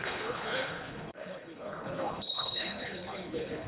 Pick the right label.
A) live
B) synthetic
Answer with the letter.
B